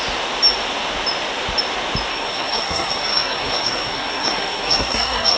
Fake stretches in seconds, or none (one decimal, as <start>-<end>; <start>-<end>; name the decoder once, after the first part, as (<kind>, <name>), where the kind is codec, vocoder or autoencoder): 2.1-5.4 (codec, SNAC)